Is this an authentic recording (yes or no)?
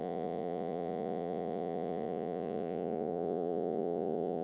no